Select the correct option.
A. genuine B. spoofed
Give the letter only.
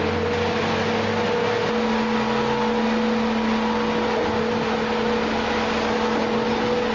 A